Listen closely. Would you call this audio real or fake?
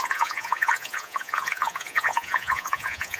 fake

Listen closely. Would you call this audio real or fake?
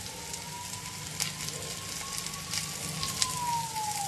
real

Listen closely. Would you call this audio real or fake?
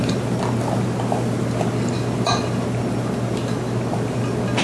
real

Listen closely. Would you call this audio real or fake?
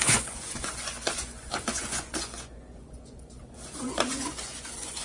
fake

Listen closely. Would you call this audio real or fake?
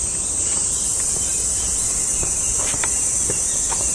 real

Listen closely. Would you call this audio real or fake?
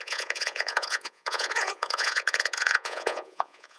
fake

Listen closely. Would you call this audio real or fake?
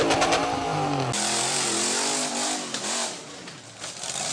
real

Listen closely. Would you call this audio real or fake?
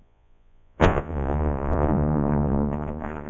fake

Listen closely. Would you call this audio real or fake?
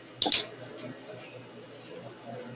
real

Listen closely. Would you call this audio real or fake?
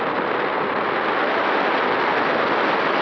real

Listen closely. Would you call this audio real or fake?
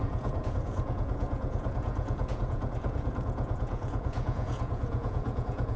fake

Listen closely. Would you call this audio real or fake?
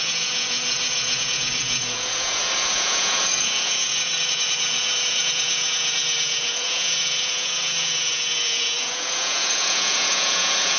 fake